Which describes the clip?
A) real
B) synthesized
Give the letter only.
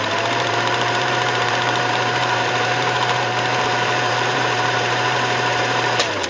B